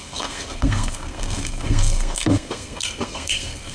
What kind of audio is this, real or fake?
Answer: fake